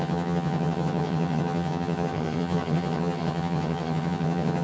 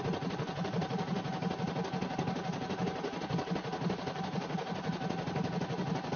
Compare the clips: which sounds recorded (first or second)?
second